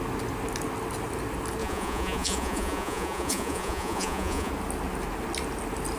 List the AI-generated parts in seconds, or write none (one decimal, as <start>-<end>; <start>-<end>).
1.6-4.5